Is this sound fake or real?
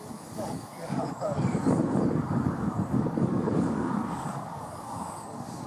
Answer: fake